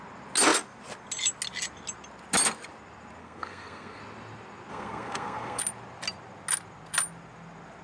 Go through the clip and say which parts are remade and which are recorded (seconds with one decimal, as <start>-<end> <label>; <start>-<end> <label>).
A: 0.0-3.2 recorded; 3.2-4.0 remade; 4.0-4.7 recorded; 4.7-5.6 remade; 5.6-7.8 recorded